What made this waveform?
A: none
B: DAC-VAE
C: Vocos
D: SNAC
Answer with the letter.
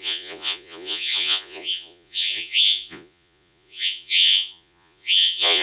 C